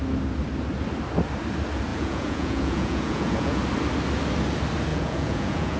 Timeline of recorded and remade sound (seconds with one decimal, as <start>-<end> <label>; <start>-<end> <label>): 0.0-1.9 recorded; 1.9-3.6 remade; 3.6-4.9 recorded; 4.9-5.8 remade